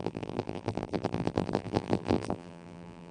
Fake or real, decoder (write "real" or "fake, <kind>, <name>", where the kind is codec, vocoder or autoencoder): fake, vocoder, BigVGAN v2